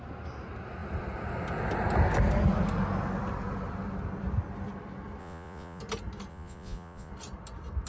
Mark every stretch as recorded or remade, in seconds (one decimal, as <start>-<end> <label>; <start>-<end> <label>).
0.0-5.2 recorded; 5.2-5.8 remade; 5.8-6.3 recorded; 6.3-7.1 remade; 7.1-7.9 recorded